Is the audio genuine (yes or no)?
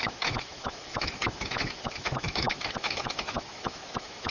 no